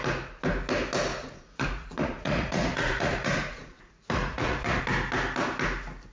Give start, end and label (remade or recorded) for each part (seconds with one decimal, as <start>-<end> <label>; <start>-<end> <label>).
0.0-1.1 recorded; 1.1-4.8 remade; 4.8-6.1 recorded